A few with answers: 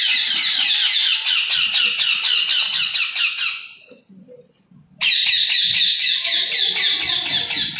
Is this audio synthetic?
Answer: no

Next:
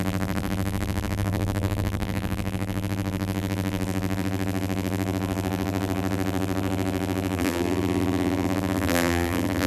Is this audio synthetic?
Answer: yes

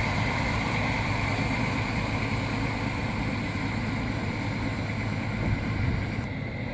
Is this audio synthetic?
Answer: yes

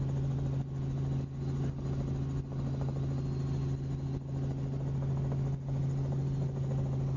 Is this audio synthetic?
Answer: no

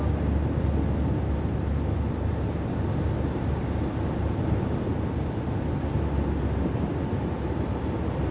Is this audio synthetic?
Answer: no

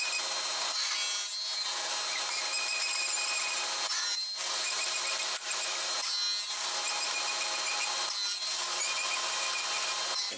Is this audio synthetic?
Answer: no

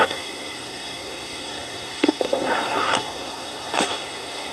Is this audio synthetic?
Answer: yes